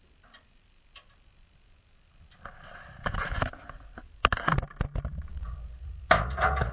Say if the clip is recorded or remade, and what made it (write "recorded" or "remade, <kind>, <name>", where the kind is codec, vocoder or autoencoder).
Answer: recorded